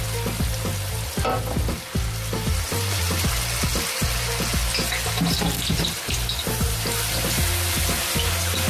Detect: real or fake real